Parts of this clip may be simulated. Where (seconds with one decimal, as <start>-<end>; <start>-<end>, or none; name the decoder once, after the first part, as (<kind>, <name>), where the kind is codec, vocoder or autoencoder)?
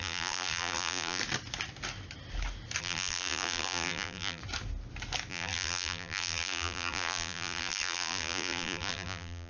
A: 0.0-1.2 (vocoder, BigVGAN v2); 2.8-4.4; 5.3-9.5